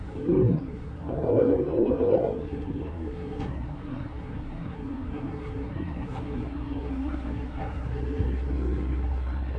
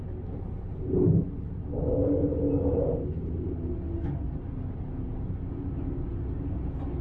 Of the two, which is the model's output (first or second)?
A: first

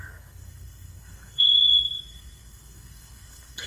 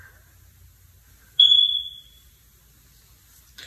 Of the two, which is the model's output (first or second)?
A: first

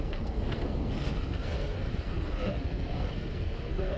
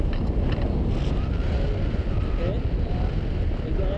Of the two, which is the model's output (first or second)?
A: first